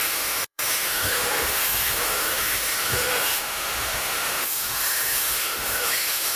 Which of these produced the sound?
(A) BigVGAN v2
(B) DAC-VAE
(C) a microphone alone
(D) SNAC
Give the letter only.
B